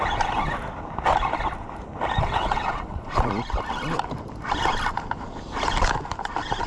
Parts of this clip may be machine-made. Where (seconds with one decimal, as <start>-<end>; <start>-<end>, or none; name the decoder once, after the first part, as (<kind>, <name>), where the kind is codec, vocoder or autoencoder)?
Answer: 2.2-3.3 (vocoder, WaveNeXt)